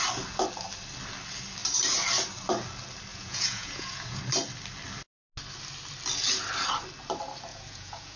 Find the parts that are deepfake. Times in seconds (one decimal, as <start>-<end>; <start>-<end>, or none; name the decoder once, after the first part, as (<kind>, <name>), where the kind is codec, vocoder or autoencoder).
3.1-4.2 (vocoder, Vocos); 7.5-8.2